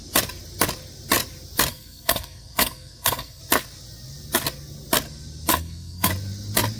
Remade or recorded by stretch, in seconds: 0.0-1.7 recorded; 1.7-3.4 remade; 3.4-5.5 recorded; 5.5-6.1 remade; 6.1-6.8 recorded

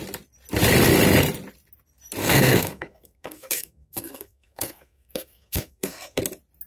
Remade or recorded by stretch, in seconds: 0.0-2.2 recorded; 2.2-6.2 remade; 6.2-6.7 recorded